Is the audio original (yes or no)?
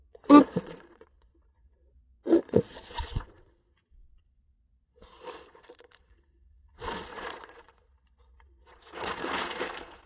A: no